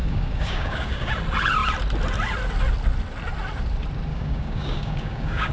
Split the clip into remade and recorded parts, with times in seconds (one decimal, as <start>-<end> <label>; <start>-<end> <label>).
0.0-1.1 remade; 1.1-4.1 recorded; 4.1-5.5 remade